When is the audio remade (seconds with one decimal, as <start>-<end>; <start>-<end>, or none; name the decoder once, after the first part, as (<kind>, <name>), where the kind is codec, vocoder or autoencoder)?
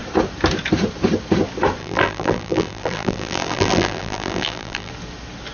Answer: 1.8-4.9 (vocoder, BigVGAN v2)